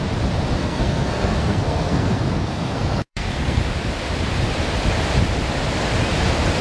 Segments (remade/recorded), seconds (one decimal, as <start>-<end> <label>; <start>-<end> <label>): 0.0-0.6 recorded; 0.6-3.6 remade; 3.6-6.6 recorded